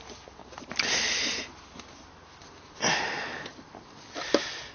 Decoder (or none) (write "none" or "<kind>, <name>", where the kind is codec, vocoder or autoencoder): none